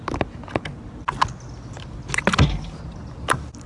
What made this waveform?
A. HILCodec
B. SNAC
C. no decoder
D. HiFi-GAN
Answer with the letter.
C